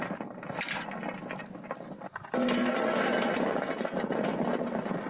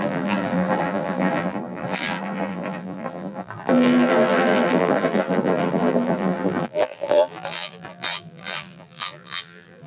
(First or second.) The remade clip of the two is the second